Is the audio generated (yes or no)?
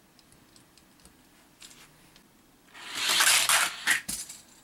no